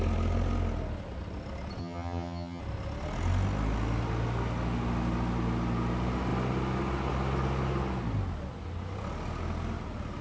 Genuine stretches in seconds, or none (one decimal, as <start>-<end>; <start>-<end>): 0.0-1.8; 2.6-10.2